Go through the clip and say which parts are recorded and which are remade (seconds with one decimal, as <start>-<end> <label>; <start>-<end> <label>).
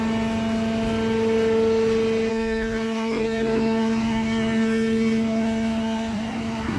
0.0-2.3 recorded; 2.3-6.8 remade